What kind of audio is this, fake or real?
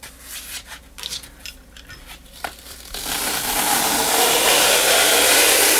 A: fake